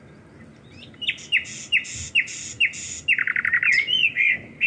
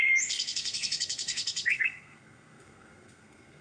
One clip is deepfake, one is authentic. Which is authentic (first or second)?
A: first